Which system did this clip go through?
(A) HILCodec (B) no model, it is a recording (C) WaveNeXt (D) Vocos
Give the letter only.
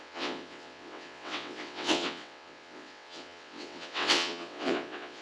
C